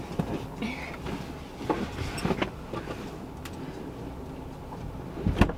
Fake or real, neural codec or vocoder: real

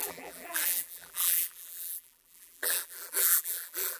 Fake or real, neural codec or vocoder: fake, vocoder, BigVGAN v2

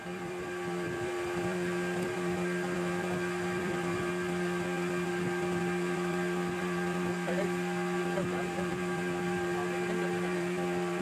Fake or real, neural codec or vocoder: fake, vocoder, BigVGAN v2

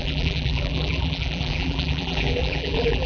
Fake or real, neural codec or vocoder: fake, vocoder, BigVGAN v2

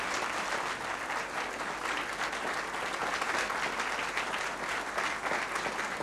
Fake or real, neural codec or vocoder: real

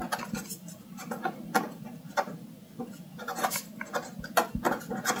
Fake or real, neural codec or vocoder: real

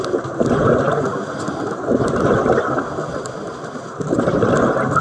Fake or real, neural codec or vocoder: real